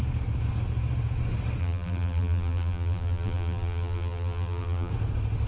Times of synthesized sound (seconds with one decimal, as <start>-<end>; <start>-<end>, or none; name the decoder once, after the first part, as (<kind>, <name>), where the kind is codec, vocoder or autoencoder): 1.6-4.9 (vocoder, BigVGAN v2)